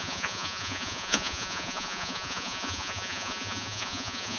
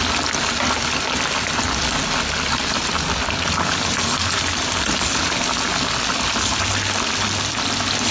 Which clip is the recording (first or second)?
second